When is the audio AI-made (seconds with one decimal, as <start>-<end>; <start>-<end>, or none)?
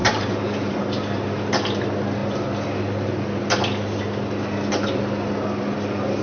0.0-0.8